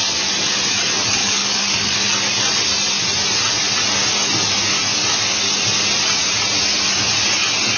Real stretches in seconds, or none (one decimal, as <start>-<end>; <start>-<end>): 0.0-1.2; 2.1-7.8